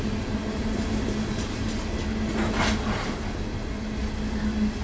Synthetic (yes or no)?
no